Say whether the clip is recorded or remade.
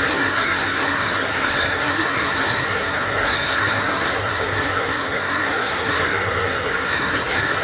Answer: remade